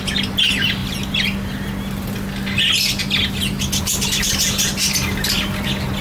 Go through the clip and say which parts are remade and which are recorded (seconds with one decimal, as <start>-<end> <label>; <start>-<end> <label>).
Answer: 0.0-6.0 recorded